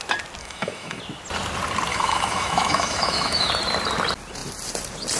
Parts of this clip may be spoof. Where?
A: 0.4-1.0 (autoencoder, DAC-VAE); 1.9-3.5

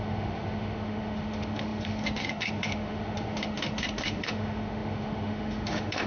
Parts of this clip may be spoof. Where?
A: 0.0-6.1 (autoencoder, DAC-VAE)

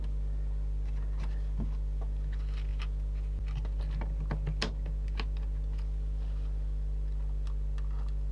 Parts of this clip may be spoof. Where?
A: none

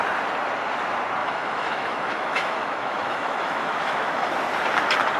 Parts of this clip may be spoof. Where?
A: 1.2-4.3 (autoencoder, DAC-VAE)